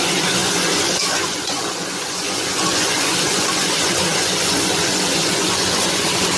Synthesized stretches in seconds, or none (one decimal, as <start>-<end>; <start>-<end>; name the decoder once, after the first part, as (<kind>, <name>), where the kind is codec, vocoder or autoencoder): 0.0-6.4 (vocoder, Vocos)